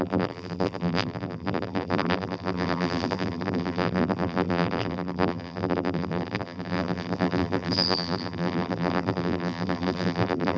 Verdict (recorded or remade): remade